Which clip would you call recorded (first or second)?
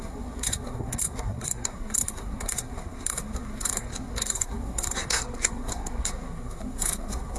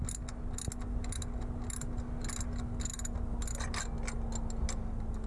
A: second